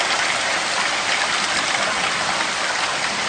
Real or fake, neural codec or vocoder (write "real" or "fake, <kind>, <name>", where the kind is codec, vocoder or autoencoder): real